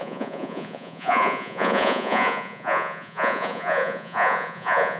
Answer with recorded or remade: remade